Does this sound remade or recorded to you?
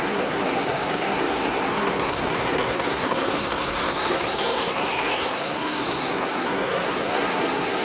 remade